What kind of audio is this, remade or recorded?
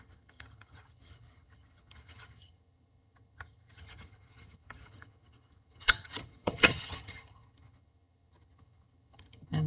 remade